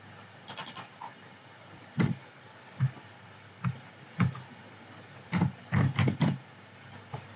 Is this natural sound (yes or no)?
yes